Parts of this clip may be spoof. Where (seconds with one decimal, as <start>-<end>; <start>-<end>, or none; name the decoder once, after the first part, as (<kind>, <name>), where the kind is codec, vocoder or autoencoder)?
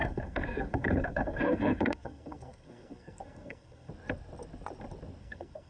0.0-3.9 (codec, SNAC); 5.2-5.7